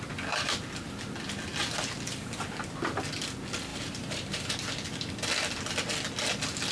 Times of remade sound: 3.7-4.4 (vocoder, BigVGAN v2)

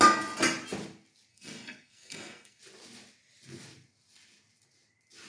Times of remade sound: 1.3-2.6 (codec, SNAC)